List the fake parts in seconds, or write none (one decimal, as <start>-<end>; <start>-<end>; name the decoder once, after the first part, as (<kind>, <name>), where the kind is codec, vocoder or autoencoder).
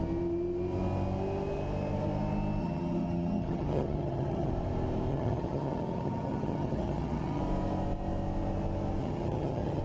2.6-4.5 (vocoder, HiFi-GAN); 5.1-7.4; 9.0-9.8